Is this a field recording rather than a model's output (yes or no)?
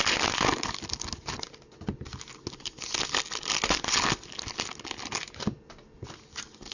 yes